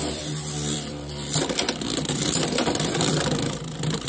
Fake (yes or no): yes